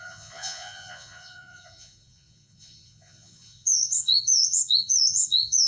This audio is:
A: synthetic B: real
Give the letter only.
A